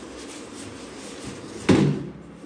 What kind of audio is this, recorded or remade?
recorded